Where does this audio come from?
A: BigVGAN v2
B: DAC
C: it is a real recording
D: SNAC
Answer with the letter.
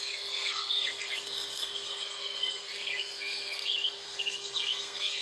D